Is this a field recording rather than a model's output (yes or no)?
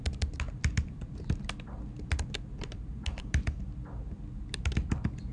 yes